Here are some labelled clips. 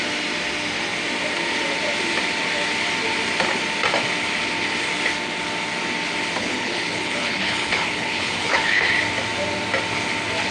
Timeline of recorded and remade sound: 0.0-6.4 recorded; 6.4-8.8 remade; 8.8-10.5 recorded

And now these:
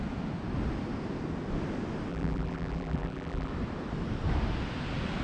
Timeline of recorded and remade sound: 0.0-2.1 recorded; 2.1-3.5 remade; 3.5-5.2 recorded